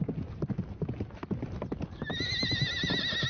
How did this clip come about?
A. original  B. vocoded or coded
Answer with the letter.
A